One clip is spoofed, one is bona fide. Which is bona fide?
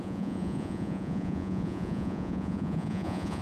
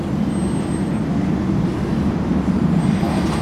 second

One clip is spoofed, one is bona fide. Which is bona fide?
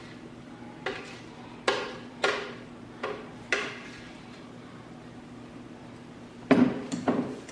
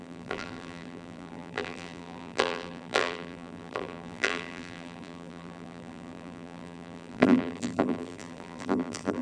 first